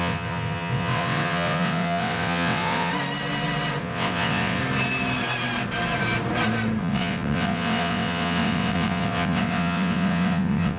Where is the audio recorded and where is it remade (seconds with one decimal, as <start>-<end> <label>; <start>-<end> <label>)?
0.0-2.9 remade; 2.9-3.8 recorded; 3.8-4.6 remade; 4.6-6.8 recorded; 6.8-10.8 remade